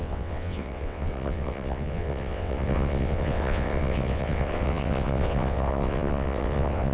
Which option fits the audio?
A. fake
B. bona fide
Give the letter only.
A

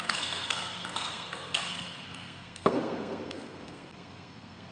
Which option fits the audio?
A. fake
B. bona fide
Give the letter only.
A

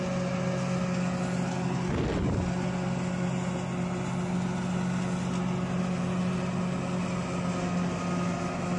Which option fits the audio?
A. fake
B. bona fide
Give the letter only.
B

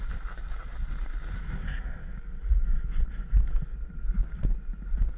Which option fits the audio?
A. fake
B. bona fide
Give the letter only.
B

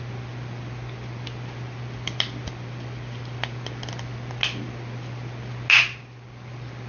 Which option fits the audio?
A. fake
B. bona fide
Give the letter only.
B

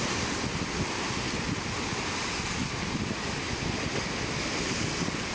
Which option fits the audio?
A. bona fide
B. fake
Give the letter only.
A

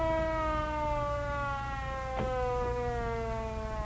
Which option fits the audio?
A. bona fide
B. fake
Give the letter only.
A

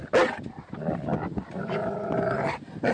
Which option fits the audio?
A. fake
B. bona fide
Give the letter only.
B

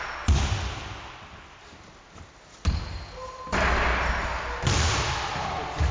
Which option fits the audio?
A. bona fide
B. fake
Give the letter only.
A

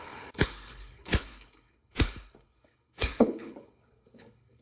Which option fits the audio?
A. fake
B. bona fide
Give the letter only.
A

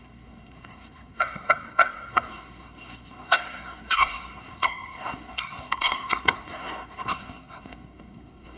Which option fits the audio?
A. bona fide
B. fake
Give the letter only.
B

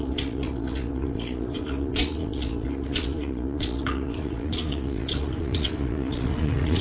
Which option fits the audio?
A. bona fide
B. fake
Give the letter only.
B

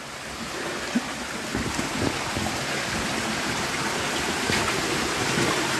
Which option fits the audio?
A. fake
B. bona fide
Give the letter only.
B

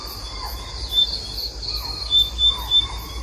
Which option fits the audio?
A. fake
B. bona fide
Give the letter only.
B